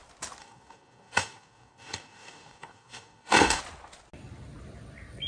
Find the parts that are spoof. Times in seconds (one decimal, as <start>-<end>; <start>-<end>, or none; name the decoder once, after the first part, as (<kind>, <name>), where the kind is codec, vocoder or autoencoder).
0.4-3.6 (codec, DAC)